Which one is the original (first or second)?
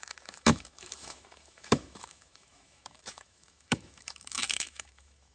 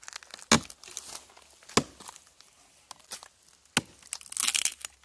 second